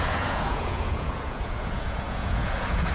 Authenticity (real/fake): fake